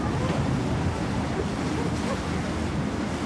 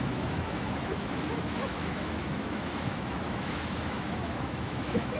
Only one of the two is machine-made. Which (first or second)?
second